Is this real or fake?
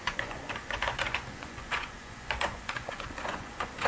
fake